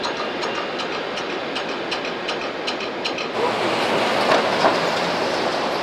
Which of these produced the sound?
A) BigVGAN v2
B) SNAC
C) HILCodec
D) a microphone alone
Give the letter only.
A